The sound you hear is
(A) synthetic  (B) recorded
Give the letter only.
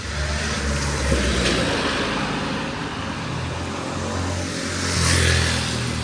B